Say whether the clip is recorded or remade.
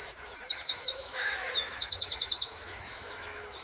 remade